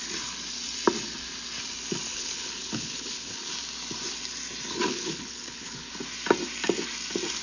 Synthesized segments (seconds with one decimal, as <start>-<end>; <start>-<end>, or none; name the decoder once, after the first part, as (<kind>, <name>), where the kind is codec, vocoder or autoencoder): 2.1-3.5 (codec, HILCodec); 4.9-5.9